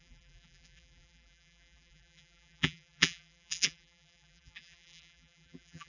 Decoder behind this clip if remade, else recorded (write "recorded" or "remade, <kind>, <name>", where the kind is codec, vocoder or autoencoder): remade, vocoder, BigVGAN v2